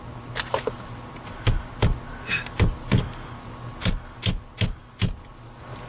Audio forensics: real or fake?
real